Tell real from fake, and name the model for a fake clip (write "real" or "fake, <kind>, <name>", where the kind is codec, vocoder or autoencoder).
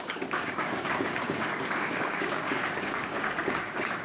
fake, codec, DAC